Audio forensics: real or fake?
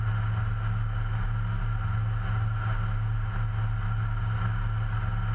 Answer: real